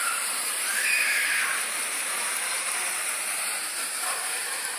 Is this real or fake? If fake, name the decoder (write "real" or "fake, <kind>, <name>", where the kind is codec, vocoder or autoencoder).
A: fake, vocoder, BigVGAN v2